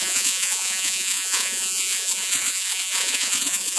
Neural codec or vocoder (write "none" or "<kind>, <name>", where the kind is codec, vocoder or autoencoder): vocoder, Vocos